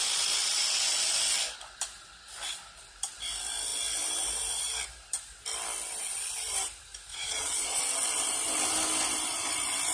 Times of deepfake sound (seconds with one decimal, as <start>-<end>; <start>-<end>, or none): 7.1-7.8

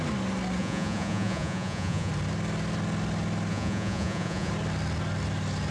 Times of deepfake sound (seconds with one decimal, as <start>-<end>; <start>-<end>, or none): 0.6-2.1; 3.5-4.5